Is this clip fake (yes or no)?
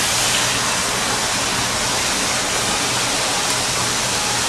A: no